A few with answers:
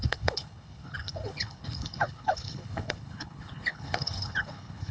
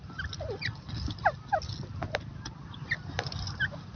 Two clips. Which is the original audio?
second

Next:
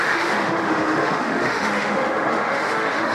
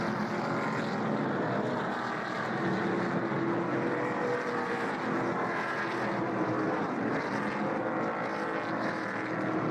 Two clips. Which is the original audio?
second